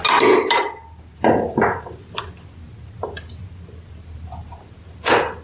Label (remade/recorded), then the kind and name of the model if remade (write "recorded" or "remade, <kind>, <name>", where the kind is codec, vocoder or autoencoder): recorded